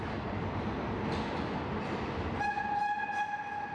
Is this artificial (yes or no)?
no